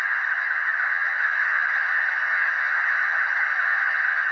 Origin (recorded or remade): remade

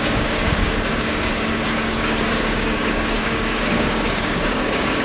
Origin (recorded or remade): remade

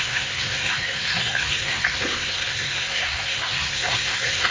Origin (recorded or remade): remade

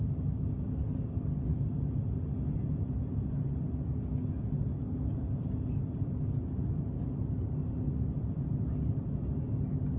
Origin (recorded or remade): recorded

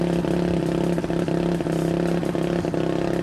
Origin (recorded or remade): recorded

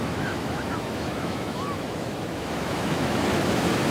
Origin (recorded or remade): remade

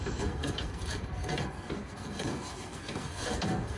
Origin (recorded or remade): remade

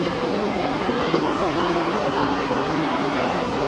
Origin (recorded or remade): remade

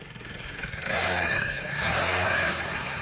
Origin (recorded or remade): remade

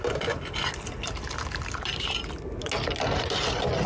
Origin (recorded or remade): recorded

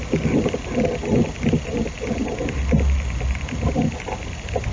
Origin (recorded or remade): recorded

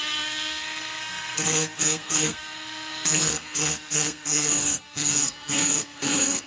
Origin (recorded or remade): remade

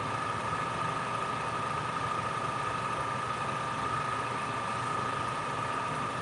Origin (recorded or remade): recorded